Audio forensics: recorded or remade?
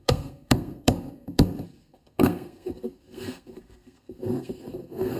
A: remade